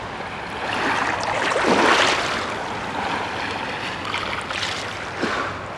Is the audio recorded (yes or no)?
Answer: yes